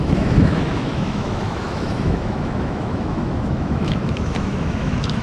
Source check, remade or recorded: remade